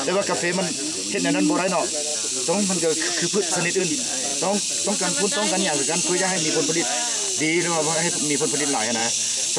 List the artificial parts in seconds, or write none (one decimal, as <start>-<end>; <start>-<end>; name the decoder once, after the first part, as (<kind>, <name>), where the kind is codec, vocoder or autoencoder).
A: 5.9-8.2 (vocoder, BigVGAN v2); 9.0-9.6

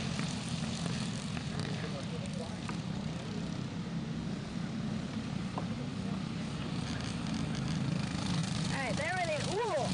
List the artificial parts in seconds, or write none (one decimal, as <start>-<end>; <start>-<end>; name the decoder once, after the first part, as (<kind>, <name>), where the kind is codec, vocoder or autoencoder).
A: 1.6-3.1 (vocoder, BigVGAN v2); 8.4-9.9